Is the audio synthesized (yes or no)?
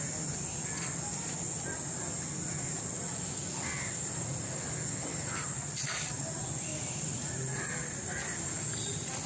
no